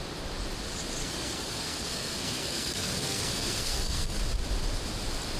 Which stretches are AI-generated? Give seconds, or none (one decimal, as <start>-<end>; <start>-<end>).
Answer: 1.0-4.2